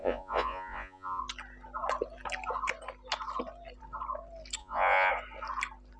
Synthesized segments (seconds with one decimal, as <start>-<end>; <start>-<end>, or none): 0.0-1.2; 4.6-5.1